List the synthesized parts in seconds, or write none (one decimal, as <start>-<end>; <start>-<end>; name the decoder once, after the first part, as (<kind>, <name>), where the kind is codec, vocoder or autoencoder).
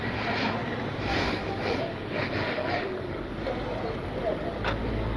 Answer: 1.1-3.3 (codec, DAC)